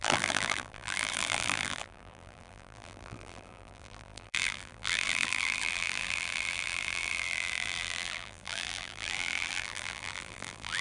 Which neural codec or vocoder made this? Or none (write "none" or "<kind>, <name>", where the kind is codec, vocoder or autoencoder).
vocoder, BigVGAN v2